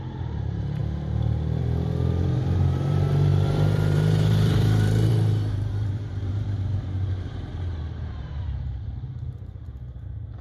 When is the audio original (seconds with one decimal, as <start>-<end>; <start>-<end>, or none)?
0.8-1.6